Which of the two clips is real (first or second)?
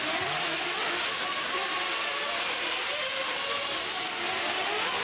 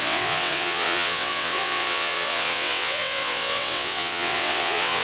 first